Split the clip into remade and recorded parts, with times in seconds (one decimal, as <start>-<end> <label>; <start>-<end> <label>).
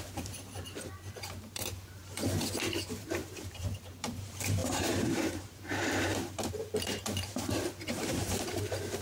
0.0-2.0 remade; 2.0-3.0 recorded; 3.0-9.0 remade